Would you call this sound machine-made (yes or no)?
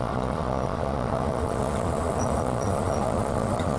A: yes